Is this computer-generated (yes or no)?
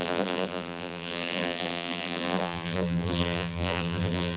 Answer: yes